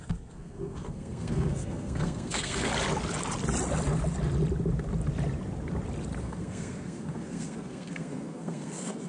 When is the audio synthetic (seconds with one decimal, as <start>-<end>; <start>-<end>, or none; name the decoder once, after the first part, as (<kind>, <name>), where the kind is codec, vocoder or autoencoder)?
0.0-2.7 (codec, SNAC); 6.2-9.1